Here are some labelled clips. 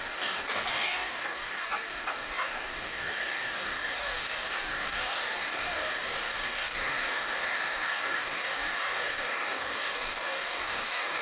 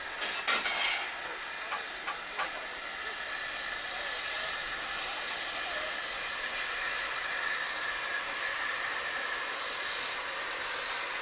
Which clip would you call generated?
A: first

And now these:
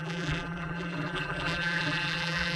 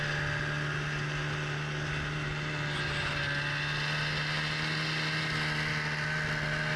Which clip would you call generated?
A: first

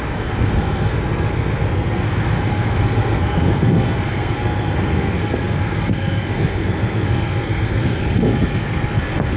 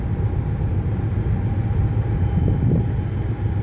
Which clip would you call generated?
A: first